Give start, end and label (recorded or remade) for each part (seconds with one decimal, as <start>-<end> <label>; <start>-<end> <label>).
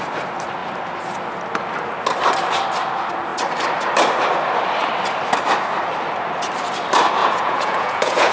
0.0-7.2 recorded; 7.2-8.3 remade